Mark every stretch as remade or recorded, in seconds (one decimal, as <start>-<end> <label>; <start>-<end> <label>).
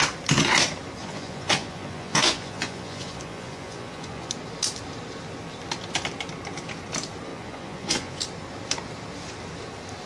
0.0-1.0 recorded; 1.0-4.3 remade; 4.3-7.3 recorded; 7.3-8.2 remade; 8.2-10.1 recorded